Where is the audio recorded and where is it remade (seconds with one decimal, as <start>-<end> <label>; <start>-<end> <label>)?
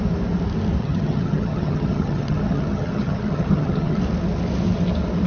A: 0.0-0.8 recorded; 0.8-4.0 remade; 4.0-5.3 recorded